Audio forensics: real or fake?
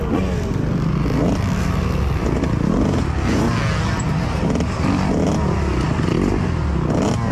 real